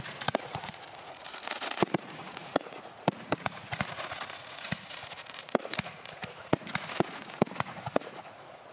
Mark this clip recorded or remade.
remade